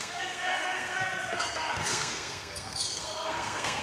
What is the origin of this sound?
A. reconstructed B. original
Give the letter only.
A